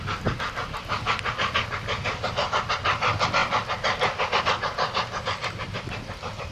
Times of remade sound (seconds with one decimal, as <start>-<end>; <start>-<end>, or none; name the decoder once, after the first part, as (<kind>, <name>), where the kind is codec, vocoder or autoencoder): none